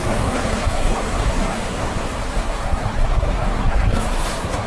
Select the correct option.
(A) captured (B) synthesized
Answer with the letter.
B